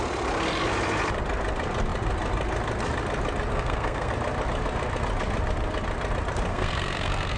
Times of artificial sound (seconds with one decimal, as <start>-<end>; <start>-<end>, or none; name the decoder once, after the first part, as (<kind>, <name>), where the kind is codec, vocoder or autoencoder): 3.5-4.1 (codec, SNAC); 6.5-7.4